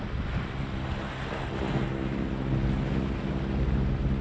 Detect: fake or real real